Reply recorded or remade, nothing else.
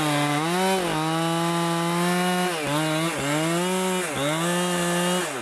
recorded